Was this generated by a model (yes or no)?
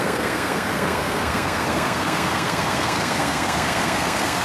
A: yes